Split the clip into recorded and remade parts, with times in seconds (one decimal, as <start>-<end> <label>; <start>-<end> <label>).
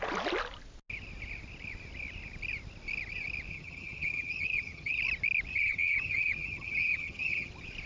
0.0-3.5 recorded; 3.5-5.0 remade; 5.0-5.5 recorded; 5.5-7.5 remade; 7.5-7.9 recorded